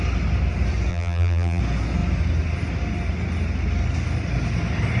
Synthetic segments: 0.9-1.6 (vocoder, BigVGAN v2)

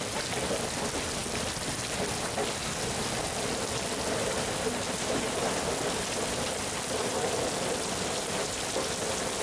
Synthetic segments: 1.2-1.7 (vocoder, BigVGAN v2)